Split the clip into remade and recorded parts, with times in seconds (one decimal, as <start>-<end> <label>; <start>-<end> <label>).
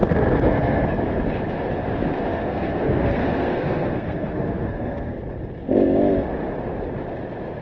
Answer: 0.0-1.0 remade; 1.0-2.3 recorded; 2.3-5.2 remade; 5.2-7.6 recorded